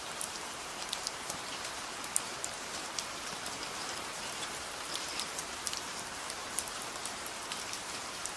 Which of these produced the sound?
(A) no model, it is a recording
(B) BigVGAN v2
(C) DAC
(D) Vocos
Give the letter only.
B